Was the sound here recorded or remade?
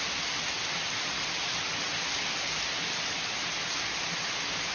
recorded